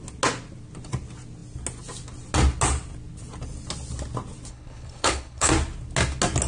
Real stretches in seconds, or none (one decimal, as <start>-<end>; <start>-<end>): 0.0-4.5; 5.5-6.5